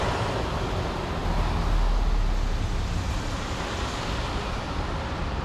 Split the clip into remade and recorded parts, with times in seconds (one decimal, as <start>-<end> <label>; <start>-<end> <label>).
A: 0.0-5.4 recorded